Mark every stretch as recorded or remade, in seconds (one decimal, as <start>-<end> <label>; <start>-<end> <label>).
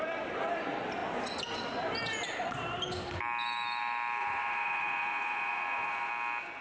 0.0-4.2 recorded; 4.2-6.1 remade; 6.1-6.6 recorded